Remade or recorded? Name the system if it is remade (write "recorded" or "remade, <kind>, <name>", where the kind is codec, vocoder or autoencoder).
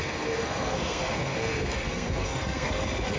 remade, codec, SNAC